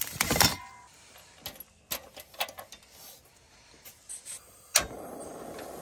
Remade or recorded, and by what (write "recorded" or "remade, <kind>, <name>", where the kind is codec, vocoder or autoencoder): recorded